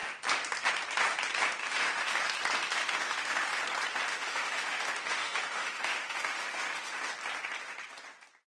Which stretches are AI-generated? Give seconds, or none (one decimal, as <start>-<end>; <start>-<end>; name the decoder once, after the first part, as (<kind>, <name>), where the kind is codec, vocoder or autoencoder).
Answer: 1.6-2.2 (autoencoder, DAC-VAE); 2.8-3.6; 4.1-7.1